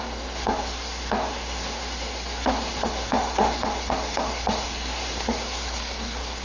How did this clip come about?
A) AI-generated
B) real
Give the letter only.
A